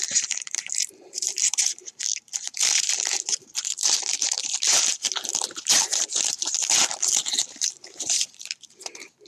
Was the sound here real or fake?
fake